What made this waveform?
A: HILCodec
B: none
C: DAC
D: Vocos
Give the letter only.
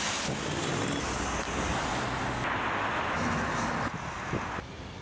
B